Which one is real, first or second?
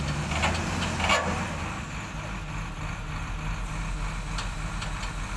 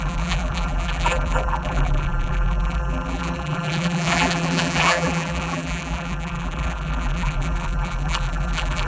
first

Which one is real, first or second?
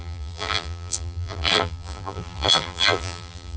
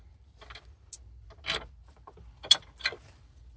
second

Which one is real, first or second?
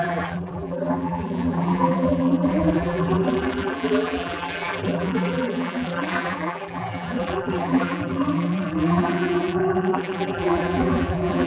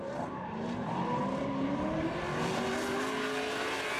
second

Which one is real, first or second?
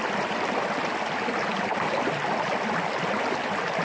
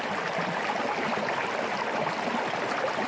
first